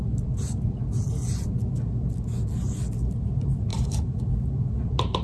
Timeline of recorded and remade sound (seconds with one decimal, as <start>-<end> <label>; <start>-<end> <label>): 0.0-3.7 recorded; 3.7-4.3 remade; 4.3-5.2 recorded

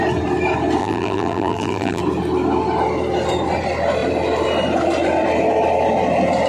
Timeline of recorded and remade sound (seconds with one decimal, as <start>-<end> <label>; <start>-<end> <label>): 0.0-0.8 recorded; 0.8-2.0 remade; 2.0-6.5 recorded

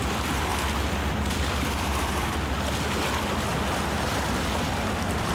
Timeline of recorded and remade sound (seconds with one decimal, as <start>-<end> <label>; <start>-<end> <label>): 0.0-0.5 recorded; 0.5-2.7 remade; 2.7-3.5 recorded; 3.5-5.3 remade